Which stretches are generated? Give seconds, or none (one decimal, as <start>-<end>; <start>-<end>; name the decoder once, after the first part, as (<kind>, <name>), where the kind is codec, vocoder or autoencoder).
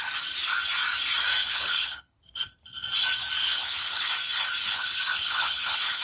1.4-2.2 (codec, HILCodec); 3.4-4.1; 4.7-6.0